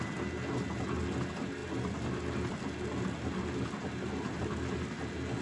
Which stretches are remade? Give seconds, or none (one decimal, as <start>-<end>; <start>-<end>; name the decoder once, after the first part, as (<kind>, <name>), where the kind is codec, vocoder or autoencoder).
none